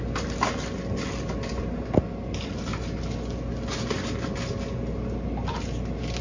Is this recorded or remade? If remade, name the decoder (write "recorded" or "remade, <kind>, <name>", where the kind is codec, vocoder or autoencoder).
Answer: recorded